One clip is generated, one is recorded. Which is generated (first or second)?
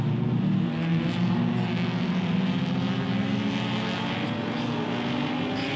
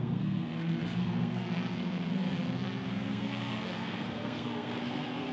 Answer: second